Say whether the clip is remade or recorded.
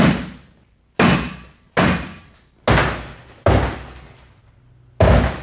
recorded